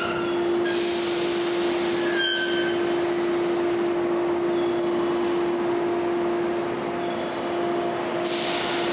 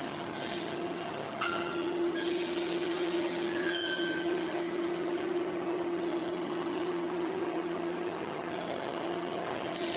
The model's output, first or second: second